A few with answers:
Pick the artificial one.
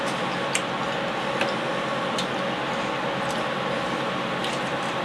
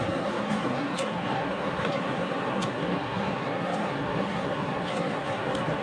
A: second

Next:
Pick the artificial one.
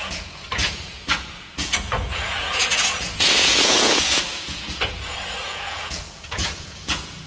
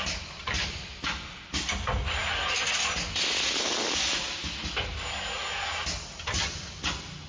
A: first